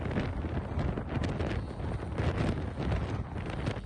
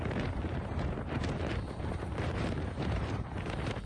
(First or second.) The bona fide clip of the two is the first